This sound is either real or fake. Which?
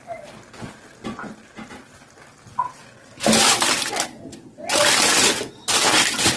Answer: real